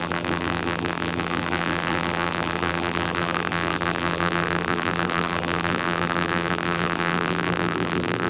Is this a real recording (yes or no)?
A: no